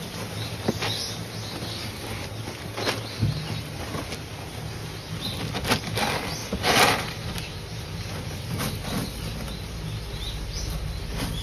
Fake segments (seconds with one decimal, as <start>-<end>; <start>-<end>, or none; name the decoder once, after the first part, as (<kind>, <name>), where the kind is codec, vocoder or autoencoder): 6.4-8.7 (vocoder, BigVGAN v2)